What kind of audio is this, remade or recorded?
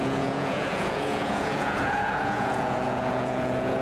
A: remade